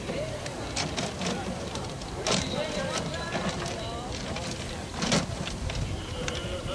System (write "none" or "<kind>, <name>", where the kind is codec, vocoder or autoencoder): vocoder, BigVGAN v2